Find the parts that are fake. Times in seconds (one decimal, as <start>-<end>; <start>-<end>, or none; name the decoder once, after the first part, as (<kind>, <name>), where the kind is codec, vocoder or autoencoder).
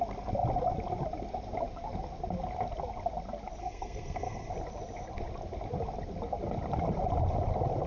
3.6-4.5 (codec, SNAC)